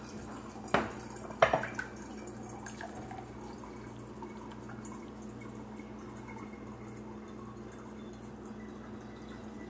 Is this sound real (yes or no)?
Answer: yes